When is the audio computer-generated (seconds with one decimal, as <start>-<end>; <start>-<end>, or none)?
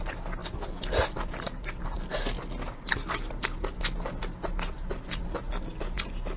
none